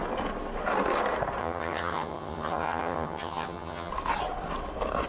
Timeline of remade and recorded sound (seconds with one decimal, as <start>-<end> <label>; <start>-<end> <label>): 0.0-1.4 recorded; 1.4-3.9 remade; 3.9-5.1 recorded